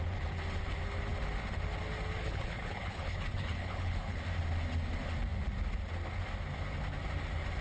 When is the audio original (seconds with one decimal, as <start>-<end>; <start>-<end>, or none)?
0.0-2.2; 4.2-7.6